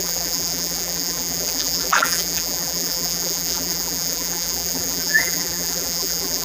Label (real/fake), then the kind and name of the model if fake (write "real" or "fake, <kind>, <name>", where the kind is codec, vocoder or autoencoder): fake, vocoder, BigVGAN v2